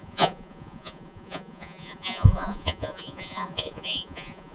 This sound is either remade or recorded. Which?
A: remade